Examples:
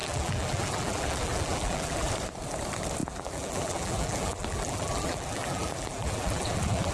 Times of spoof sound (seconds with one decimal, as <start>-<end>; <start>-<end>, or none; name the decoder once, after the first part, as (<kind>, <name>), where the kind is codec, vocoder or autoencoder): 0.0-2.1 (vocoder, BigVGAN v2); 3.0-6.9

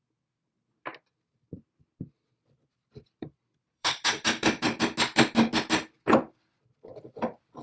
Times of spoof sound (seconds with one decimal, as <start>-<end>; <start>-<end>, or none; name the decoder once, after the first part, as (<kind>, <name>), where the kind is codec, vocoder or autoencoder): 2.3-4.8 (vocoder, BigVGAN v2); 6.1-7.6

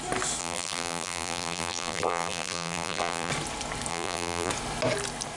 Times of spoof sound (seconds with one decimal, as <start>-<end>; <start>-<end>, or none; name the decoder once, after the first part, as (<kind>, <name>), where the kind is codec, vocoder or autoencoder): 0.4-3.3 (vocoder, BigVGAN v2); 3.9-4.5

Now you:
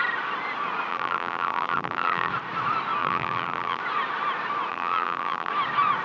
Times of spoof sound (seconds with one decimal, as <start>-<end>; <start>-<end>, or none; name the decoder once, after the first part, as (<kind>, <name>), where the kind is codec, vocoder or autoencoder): 0.9-2.3 (vocoder, BigVGAN v2); 3.0-3.8; 4.7-5.5